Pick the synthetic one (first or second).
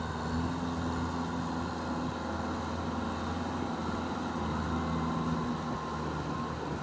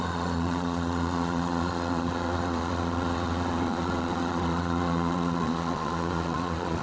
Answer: second